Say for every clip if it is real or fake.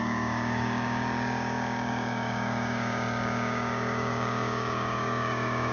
fake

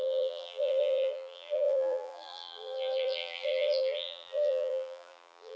fake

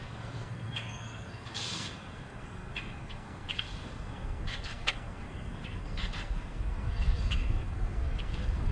fake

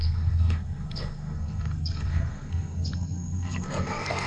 fake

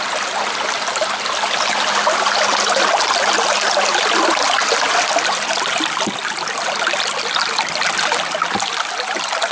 real